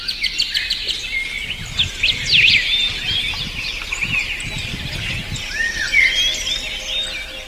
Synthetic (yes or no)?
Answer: no